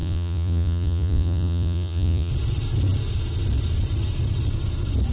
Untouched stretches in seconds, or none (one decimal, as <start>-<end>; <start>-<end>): 2.3-5.1